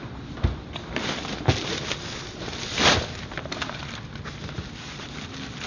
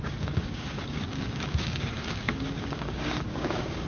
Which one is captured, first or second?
first